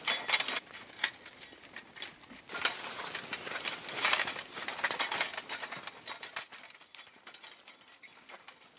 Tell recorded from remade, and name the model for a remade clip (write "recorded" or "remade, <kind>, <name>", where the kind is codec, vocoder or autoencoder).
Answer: recorded